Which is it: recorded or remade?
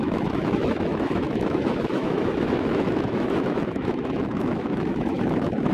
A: remade